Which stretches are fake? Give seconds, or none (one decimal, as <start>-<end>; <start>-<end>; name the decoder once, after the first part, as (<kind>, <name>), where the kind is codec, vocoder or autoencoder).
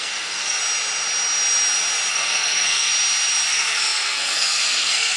0.0-0.6 (codec, SNAC); 2.1-2.9; 3.5-5.2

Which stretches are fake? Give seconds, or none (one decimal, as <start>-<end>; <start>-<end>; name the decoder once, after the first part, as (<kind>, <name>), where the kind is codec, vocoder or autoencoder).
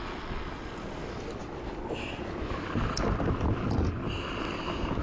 none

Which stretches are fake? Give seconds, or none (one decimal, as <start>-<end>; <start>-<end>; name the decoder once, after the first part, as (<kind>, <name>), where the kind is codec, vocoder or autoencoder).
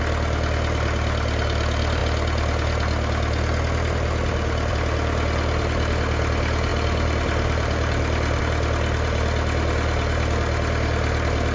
none